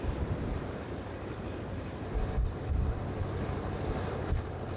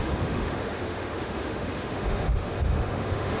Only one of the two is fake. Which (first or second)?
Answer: second